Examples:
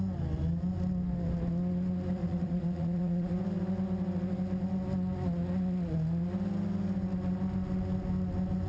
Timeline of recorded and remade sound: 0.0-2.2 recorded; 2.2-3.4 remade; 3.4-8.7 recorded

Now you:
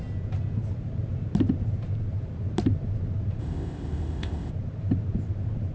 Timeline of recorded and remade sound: 0.0-3.4 recorded; 3.4-4.5 remade; 4.5-5.7 recorded

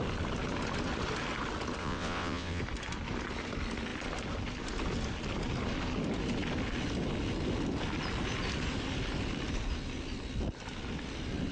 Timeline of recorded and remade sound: 0.0-1.8 recorded; 1.8-2.6 remade; 2.6-11.5 recorded

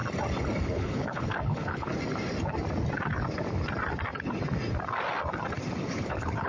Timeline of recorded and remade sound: 0.0-0.6 recorded; 0.6-1.9 remade; 1.9-5.8 recorded; 5.8-6.5 remade

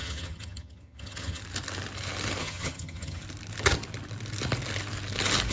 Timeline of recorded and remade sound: 0.0-1.4 remade; 1.4-2.4 recorded; 2.4-3.2 remade; 3.2-5.5 recorded

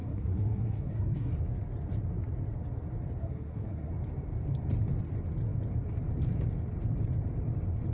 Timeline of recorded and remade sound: 0.0-1.3 remade; 1.3-3.2 recorded; 3.2-3.9 remade; 3.9-7.9 recorded

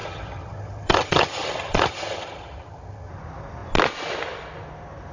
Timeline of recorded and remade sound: 0.0-3.1 remade; 3.1-5.1 recorded

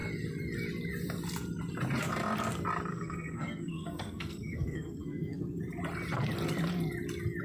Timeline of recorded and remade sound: 0.0-2.9 recorded; 2.9-5.6 remade; 5.6-7.4 recorded